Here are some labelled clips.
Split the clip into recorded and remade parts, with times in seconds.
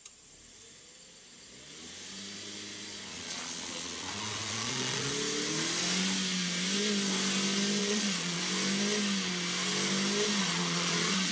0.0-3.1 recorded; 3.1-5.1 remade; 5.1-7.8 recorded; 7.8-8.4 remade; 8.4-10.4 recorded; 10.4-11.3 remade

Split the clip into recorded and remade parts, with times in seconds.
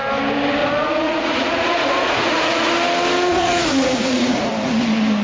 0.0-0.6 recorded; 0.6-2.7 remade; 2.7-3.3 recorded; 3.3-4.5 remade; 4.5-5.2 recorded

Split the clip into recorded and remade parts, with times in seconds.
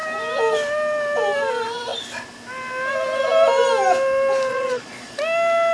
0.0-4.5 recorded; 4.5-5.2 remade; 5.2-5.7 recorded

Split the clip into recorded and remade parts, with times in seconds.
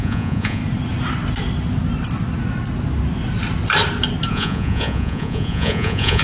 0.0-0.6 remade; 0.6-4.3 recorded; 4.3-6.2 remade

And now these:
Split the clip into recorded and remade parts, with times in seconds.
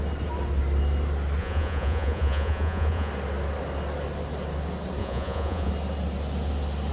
0.0-1.4 recorded; 1.4-3.1 remade; 3.1-5.0 recorded; 5.0-5.7 remade; 5.7-6.9 recorded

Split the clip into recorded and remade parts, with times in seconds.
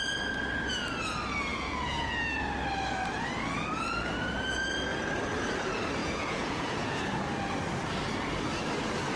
0.0-1.5 recorded; 1.5-2.1 remade; 2.1-6.0 recorded; 6.0-7.0 remade; 7.0-9.2 recorded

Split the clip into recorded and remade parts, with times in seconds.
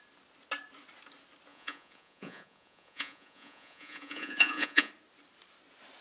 0.0-1.5 recorded; 1.5-4.9 remade; 4.9-6.0 recorded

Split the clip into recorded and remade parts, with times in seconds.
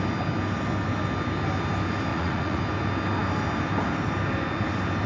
0.0-2.1 recorded; 2.1-2.6 remade; 2.6-5.1 recorded